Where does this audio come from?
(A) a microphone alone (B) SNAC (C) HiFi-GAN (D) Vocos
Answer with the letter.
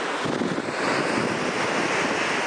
A